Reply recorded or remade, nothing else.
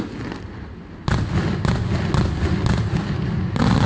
recorded